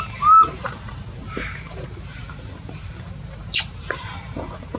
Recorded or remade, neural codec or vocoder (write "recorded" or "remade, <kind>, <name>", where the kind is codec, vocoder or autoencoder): remade, vocoder, BigVGAN v2